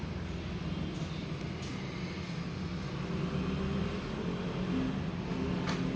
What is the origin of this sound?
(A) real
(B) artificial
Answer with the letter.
A